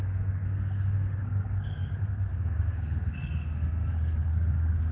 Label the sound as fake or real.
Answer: fake